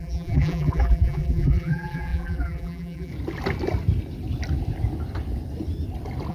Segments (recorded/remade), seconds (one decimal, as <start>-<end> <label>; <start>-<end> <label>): 0.0-3.1 remade; 3.1-6.3 recorded